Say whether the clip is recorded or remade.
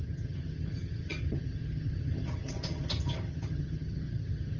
remade